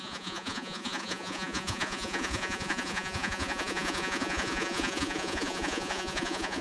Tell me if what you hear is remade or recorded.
remade